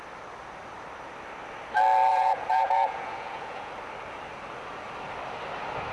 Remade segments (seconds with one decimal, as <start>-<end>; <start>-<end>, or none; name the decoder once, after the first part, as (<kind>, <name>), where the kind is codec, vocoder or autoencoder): 2.1-3.7 (vocoder, Vocos)